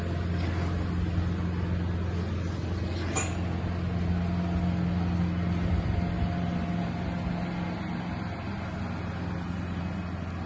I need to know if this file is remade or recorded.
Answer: recorded